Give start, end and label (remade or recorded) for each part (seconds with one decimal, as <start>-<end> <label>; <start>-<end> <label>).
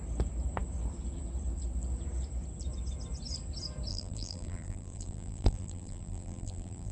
0.0-3.9 recorded; 3.9-6.9 remade